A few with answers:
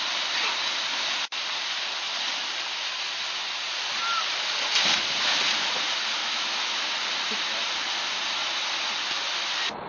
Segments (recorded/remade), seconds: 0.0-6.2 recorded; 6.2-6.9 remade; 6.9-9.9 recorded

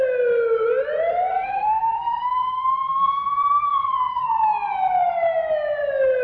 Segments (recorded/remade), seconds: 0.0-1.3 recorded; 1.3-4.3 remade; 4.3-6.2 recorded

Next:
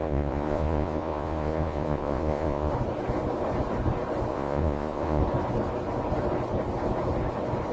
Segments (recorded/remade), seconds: 0.0-2.7 remade; 2.7-4.3 recorded; 4.3-5.2 remade; 5.2-7.7 recorded

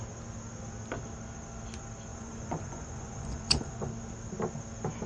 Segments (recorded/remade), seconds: 0.0-2.1 recorded; 2.1-3.9 remade; 3.9-5.1 recorded

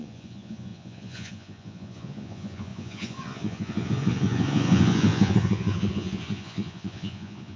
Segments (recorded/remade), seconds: 0.0-7.6 remade